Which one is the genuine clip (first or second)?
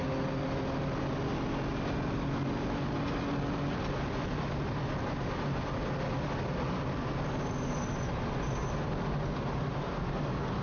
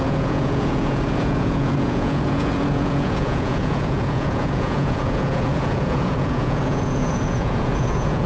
first